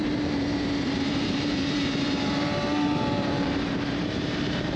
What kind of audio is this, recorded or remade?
remade